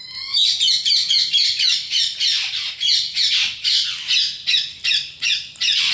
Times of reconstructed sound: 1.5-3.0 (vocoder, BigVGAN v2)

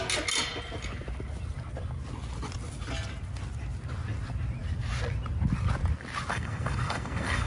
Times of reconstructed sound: 6.3-7.5 (codec, SNAC)

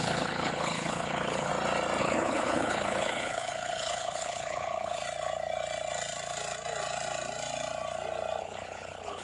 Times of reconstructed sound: 0.0-1.5 (codec, HILCodec); 2.0-5.0; 8.4-9.2